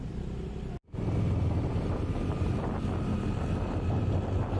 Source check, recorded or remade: recorded